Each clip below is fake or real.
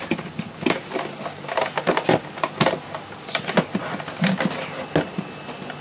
real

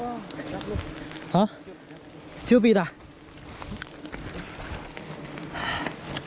real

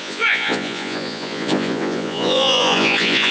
fake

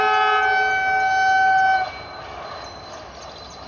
real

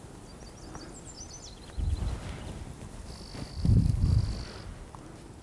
real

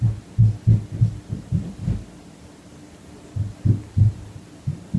real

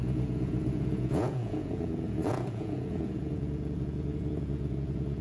fake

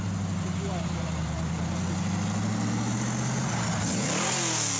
real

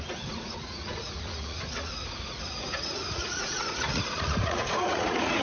fake